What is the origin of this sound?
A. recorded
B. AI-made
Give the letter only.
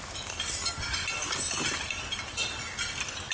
A